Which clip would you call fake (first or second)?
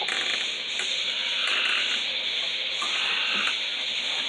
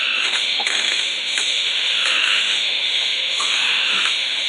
second